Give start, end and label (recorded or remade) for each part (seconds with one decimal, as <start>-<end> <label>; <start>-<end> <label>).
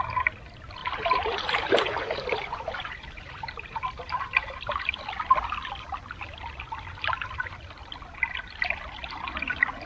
0.0-0.8 recorded; 0.8-5.0 remade; 5.0-9.9 recorded